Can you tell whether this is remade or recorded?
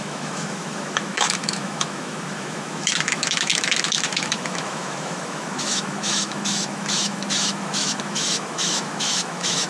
remade